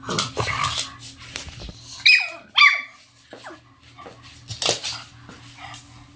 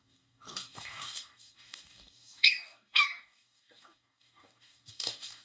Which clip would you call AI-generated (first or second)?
second